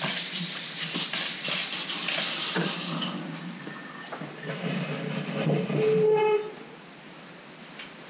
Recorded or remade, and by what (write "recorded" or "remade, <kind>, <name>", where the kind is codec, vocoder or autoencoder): recorded